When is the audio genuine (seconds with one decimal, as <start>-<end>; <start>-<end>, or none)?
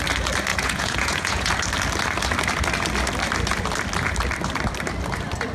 0.0-0.5; 1.5-5.5